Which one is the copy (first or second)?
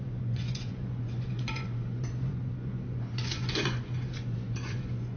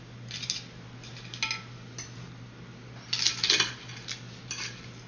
first